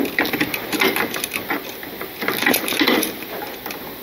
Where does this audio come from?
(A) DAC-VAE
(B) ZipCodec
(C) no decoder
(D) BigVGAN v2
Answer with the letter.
C